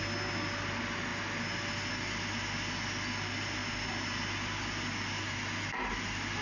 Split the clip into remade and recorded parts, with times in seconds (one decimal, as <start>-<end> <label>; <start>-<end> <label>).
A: 0.0-6.4 recorded